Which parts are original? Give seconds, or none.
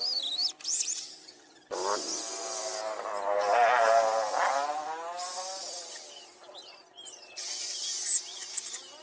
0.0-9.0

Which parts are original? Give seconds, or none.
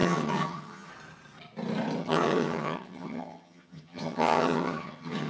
0.9-2.0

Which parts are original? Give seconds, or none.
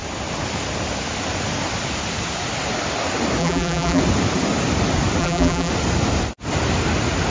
0.0-3.4; 4.0-5.2; 5.7-7.3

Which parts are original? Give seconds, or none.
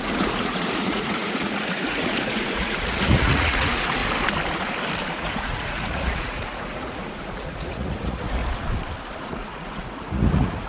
4.0-5.1; 8.4-9.2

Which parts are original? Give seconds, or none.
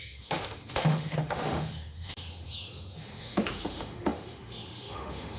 none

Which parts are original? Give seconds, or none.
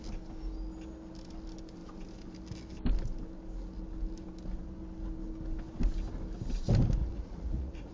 0.0-7.0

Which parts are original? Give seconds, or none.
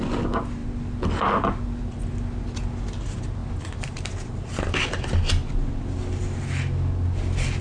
0.0-7.6